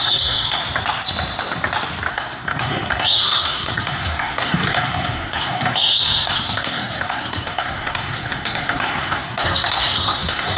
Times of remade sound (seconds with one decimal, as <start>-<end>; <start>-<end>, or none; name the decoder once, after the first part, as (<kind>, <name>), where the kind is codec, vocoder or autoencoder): 0.0-0.6 (codec, SNAC); 2.1-10.6